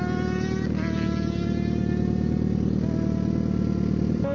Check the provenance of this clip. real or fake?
real